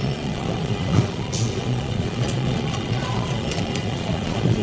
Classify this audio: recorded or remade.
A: remade